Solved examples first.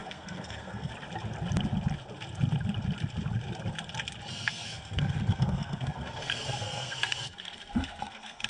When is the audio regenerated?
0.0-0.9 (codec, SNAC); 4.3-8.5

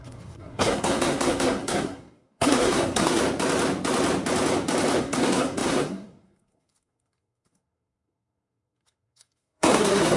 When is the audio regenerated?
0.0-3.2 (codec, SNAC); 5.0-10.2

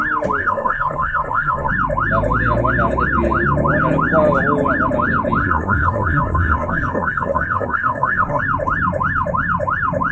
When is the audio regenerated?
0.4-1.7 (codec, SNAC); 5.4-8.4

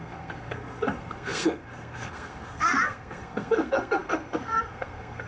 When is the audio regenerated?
0.0-5.3 (codec, SNAC)

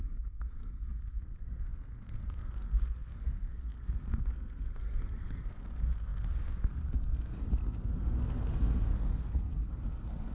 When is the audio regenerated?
0.0-10.3 (codec, SNAC)